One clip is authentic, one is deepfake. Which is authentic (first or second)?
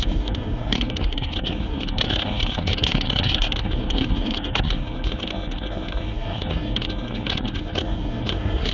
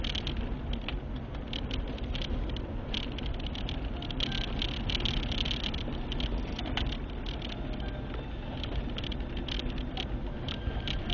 second